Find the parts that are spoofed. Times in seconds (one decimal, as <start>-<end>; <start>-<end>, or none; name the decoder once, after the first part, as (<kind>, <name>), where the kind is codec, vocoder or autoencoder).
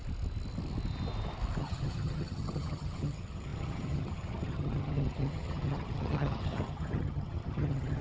1.6-8.0 (vocoder, HiFi-GAN)